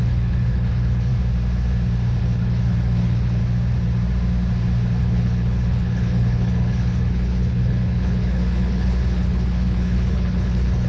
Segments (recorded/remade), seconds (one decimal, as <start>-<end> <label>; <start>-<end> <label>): 0.0-1.1 remade; 1.1-2.2 recorded; 2.2-3.4 remade; 3.4-5.0 recorded; 5.0-10.9 remade